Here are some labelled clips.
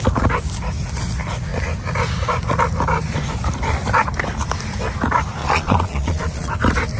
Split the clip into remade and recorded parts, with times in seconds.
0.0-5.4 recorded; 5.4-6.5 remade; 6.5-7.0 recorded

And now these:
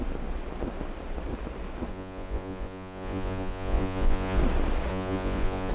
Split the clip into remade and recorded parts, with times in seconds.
0.0-1.9 recorded; 1.9-4.4 remade; 4.4-4.9 recorded; 4.9-5.7 remade

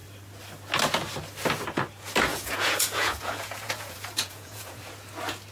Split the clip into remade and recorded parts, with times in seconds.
0.0-2.3 recorded; 2.3-4.8 remade; 4.8-5.5 recorded

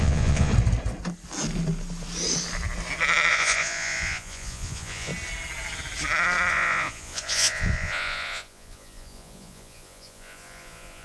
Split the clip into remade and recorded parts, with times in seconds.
0.0-0.5 remade; 0.5-3.3 recorded; 3.3-5.1 remade; 5.1-6.5 recorded; 6.5-11.0 remade

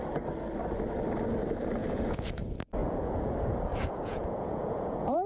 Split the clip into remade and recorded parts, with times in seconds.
0.0-1.8 recorded; 1.8-2.4 remade; 2.4-2.8 recorded; 2.8-3.3 remade; 3.3-3.7 recorded; 3.7-5.3 remade

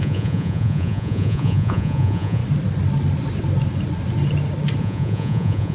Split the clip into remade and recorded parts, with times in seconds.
0.0-2.4 remade; 2.4-4.8 recorded; 4.8-5.7 remade